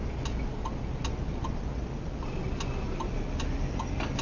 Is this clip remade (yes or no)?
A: no